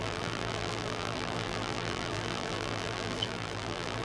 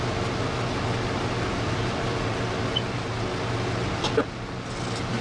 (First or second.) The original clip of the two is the second